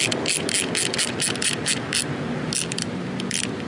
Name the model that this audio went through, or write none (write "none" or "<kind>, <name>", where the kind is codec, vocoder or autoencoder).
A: none